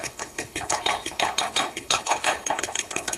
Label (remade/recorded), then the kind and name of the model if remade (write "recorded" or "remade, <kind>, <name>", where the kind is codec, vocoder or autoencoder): remade, codec, HILCodec